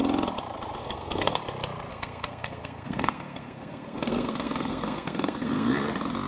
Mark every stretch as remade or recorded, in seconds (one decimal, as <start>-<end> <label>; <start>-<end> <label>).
0.0-0.8 recorded; 0.8-1.4 remade; 1.4-1.9 recorded; 1.9-5.7 remade; 5.7-6.3 recorded